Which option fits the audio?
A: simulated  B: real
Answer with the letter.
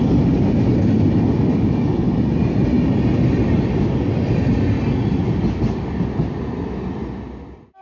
B